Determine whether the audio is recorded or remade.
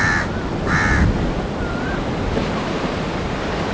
recorded